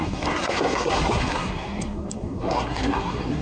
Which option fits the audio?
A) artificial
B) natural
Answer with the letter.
A